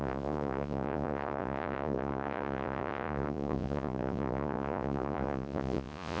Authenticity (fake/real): fake